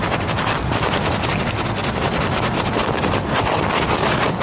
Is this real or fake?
real